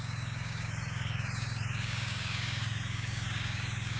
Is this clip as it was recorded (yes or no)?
no